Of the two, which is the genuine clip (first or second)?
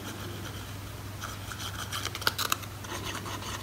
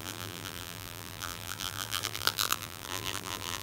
first